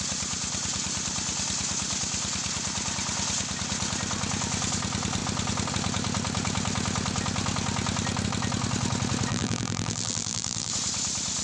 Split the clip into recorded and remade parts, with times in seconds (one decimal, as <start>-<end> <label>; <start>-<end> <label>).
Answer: 0.0-9.3 recorded; 9.3-10.7 remade; 10.7-11.4 recorded